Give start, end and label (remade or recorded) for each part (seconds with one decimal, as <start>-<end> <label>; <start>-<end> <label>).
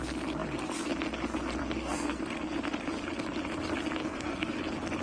0.0-1.6 recorded; 1.6-2.2 remade; 2.2-4.0 recorded; 4.0-4.6 remade; 4.6-5.0 recorded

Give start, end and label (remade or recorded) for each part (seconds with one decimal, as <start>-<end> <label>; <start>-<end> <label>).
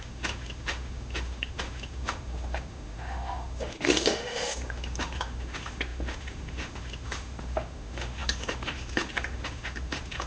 0.0-10.3 remade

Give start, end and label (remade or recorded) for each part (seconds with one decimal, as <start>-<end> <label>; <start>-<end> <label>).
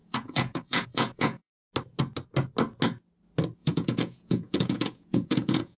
0.0-1.5 remade; 1.5-3.6 recorded; 3.6-5.8 remade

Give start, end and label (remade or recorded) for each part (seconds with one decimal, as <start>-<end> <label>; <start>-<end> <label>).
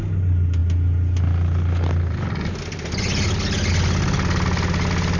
0.0-5.2 recorded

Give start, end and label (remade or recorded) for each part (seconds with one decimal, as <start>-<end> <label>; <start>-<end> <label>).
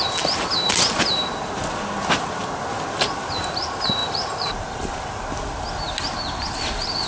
0.0-7.1 recorded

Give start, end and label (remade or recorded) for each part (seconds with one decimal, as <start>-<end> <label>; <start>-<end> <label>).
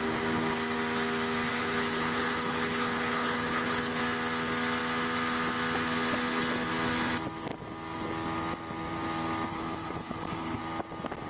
0.0-1.5 recorded; 1.5-4.0 remade; 4.0-9.5 recorded; 9.5-10.6 remade; 10.6-11.3 recorded